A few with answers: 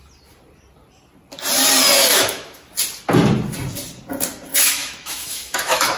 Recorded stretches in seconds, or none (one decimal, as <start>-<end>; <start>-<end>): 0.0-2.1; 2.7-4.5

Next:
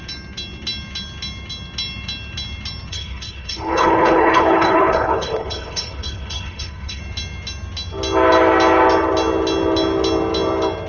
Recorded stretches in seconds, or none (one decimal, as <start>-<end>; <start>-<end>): 0.0-2.9; 7.0-10.9

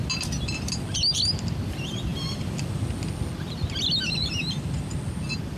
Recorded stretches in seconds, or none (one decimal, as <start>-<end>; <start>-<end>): 0.0-5.6

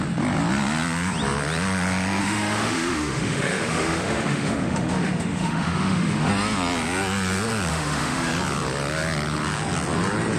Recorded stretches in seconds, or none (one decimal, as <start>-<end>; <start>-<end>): 0.0-2.2; 6.3-7.7; 8.3-10.4